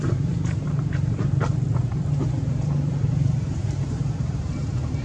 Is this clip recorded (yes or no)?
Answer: no